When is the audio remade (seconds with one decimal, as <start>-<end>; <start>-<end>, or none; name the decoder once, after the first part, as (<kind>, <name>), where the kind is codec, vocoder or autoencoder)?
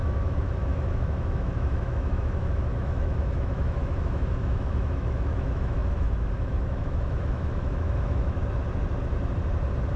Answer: 0.0-8.4 (autoencoder, DAC-VAE)